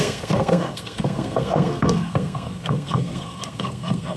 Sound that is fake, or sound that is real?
fake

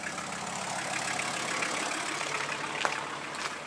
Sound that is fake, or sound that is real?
real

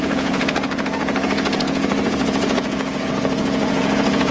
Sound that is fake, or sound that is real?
fake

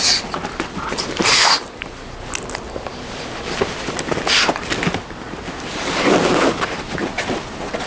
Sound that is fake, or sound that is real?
real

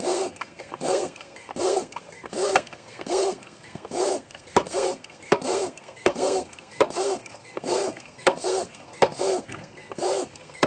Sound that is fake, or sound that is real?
fake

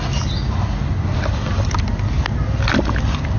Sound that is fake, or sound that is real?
real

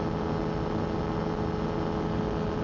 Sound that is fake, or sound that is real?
real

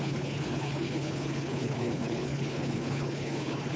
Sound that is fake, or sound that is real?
fake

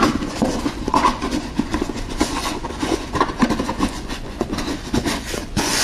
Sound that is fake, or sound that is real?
fake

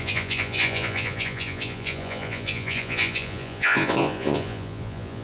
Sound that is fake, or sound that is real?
fake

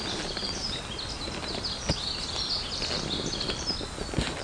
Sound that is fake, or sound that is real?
real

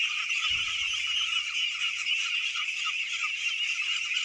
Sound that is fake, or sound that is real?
real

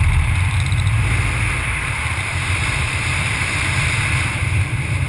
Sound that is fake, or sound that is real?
fake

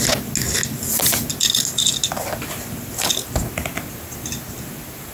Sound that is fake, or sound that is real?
real